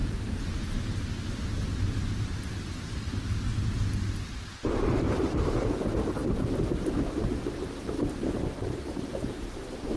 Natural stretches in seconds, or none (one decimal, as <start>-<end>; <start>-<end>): 3.5-4.7; 6.2-6.7